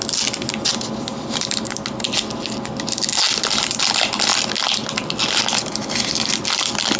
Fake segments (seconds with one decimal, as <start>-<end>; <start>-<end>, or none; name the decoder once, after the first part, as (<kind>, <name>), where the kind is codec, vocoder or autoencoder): none